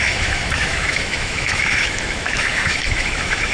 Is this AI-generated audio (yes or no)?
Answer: yes